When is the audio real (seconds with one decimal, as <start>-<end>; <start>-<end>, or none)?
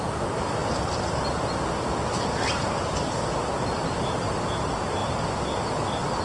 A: 0.0-6.2